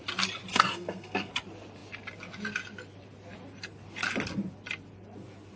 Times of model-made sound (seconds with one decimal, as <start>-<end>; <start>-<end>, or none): 0.5-1.3